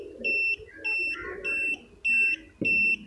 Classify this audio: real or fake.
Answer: real